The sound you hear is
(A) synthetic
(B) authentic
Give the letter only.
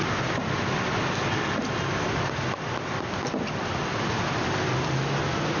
B